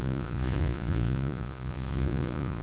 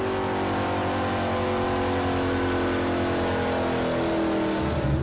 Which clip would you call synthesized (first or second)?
first